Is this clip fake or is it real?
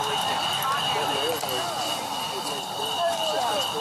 real